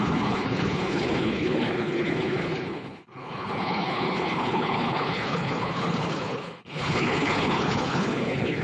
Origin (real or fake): fake